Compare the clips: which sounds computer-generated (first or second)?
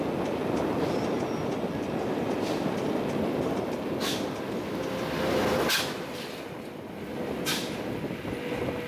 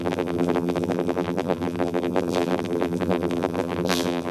second